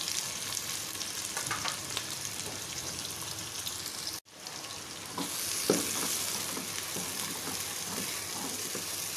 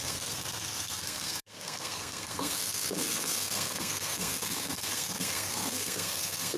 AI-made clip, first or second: second